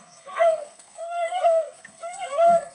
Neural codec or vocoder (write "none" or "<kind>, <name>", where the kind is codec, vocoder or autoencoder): codec, SNAC